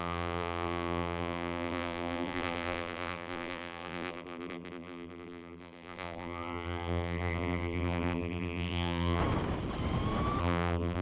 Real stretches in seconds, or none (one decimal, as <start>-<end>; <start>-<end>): 9.2-10.4